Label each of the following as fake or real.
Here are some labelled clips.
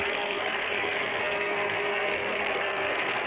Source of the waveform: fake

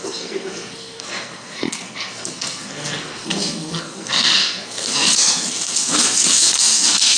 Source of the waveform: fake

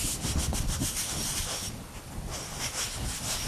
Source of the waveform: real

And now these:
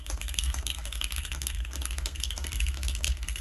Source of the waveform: fake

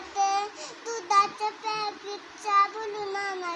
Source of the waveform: real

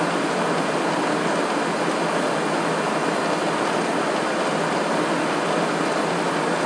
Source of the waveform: real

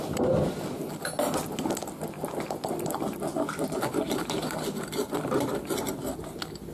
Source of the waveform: real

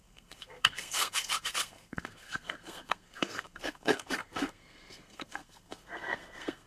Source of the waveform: fake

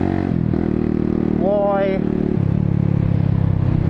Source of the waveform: real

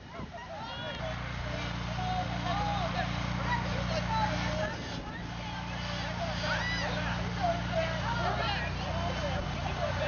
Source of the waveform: real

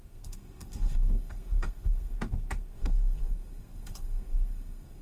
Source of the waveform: fake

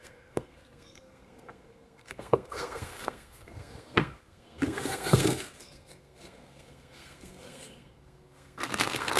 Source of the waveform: fake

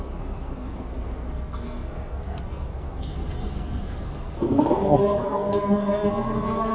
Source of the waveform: fake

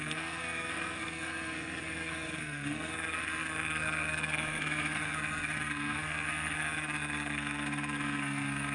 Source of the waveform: fake